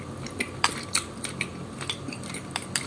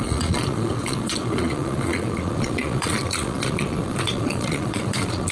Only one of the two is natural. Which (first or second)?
first